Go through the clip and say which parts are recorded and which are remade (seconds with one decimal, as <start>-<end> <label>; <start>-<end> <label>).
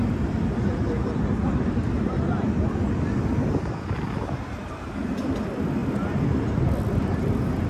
0.0-7.7 recorded